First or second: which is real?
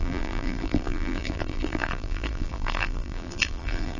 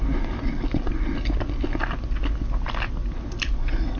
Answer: second